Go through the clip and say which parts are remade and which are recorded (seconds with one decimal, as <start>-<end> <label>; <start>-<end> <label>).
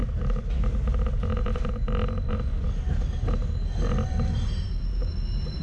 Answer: 0.0-5.6 recorded